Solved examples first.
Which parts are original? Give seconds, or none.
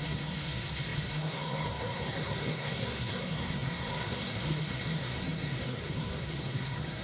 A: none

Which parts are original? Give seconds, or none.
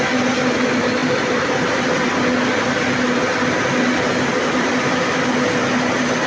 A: 0.0-6.3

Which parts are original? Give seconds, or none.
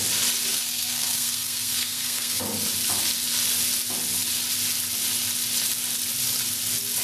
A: 0.0-0.5; 2.4-7.0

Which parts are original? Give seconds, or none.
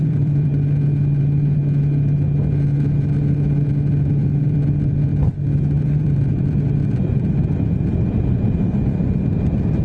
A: 0.5-1.2; 1.6-4.2; 5.1-5.6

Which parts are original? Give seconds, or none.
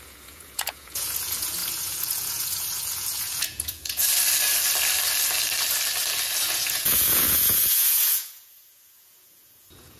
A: 4.0-6.4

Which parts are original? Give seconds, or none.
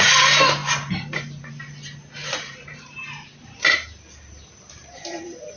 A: 0.0-0.6; 1.5-2.2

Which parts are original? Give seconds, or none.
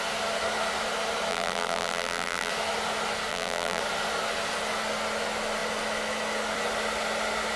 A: 0.0-1.3; 2.5-3.3; 3.8-7.6